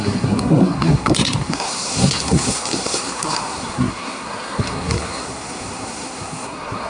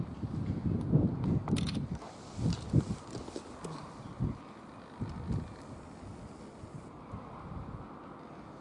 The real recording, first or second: second